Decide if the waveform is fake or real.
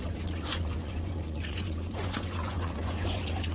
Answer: fake